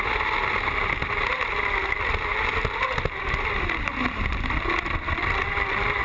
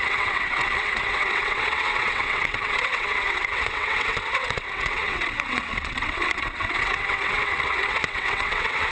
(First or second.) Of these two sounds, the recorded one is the first